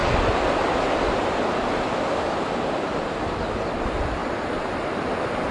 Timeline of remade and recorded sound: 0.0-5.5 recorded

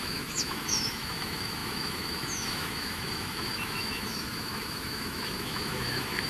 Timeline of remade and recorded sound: 0.0-6.3 remade

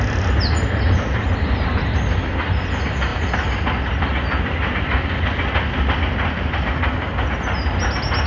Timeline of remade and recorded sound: 0.0-8.3 recorded

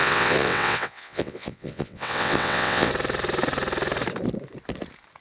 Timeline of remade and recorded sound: 0.0-2.9 remade; 2.9-5.2 recorded